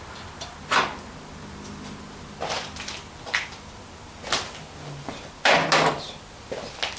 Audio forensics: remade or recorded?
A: recorded